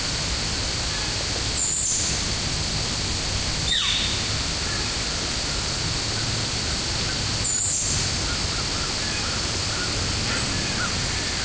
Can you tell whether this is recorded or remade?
recorded